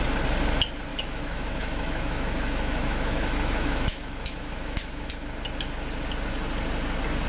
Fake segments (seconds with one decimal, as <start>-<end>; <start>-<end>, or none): 0.9-5.1